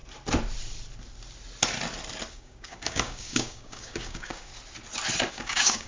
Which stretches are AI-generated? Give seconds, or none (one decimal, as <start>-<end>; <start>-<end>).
2.3-4.5; 5.3-5.9